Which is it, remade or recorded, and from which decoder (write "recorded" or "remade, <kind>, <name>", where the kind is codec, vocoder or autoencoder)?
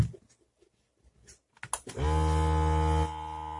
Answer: recorded